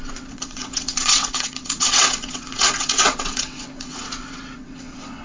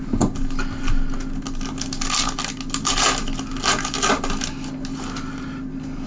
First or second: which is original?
second